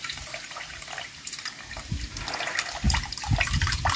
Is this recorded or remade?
recorded